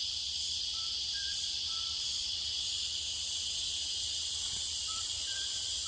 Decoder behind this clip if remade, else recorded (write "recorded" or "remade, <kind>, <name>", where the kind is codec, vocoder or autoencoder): remade, vocoder, BigVGAN v2